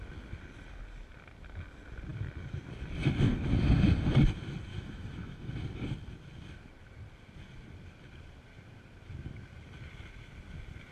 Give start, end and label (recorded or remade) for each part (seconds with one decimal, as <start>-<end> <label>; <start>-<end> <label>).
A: 0.0-4.7 recorded; 4.7-5.5 remade; 5.5-10.9 recorded